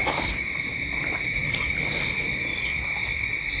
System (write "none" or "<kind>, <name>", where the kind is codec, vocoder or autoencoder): none